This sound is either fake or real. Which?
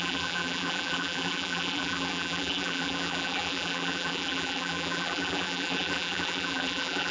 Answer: fake